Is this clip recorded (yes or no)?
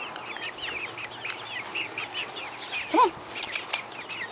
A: yes